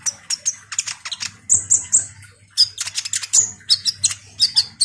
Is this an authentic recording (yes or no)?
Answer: yes